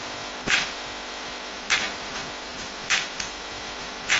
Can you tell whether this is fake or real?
real